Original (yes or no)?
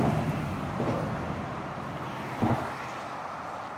yes